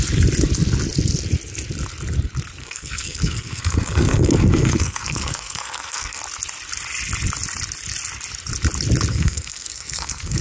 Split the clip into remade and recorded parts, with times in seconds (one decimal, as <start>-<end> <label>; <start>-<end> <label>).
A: 0.0-2.6 recorded; 2.6-6.2 remade; 6.2-9.1 recorded; 9.1-10.4 remade